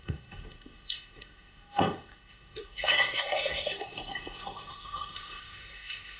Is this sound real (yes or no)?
no